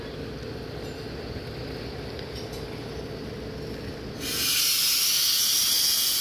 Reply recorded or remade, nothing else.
recorded